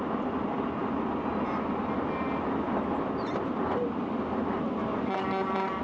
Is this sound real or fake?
real